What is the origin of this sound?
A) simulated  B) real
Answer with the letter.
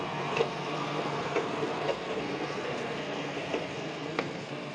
A